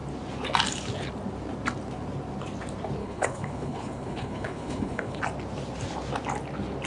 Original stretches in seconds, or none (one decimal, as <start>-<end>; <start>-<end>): 0.0-3.0; 5.2-6.9

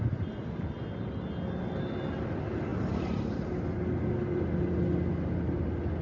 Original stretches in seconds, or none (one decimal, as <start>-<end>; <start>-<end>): 0.0-6.0

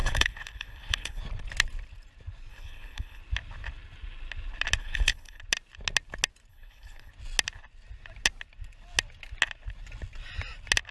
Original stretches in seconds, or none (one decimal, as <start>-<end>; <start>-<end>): 1.2-2.5; 3.2-4.8; 5.4-6.5; 7.1-10.9

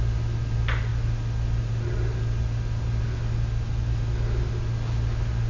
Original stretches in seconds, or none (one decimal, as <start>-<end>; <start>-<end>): 0.0-5.5

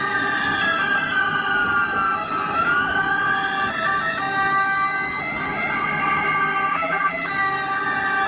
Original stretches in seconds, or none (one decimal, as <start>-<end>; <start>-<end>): 0.0-6.7; 7.3-8.3

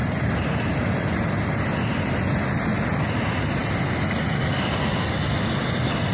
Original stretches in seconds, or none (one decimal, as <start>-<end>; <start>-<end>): 0.0-6.1